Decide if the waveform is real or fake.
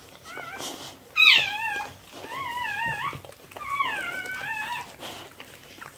real